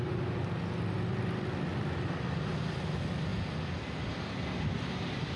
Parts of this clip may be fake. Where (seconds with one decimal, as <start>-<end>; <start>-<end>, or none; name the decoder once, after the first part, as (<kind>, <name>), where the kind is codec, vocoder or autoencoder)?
none